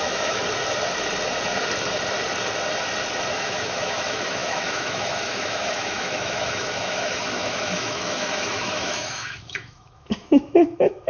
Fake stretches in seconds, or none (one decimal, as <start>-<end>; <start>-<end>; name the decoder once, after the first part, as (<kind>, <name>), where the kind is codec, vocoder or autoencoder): 0.0-0.4 (autoencoder, DAC-VAE); 3.3-11.1